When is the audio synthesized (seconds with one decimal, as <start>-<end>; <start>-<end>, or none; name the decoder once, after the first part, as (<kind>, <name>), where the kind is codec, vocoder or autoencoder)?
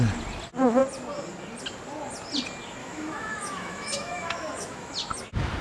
2.8-4.9 (autoencoder, DAC-VAE)